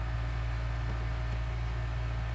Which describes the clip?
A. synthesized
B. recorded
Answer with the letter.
B